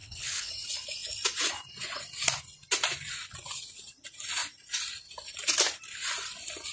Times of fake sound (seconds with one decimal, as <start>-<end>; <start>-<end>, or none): 0.0-0.5